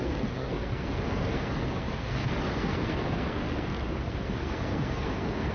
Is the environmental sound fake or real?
fake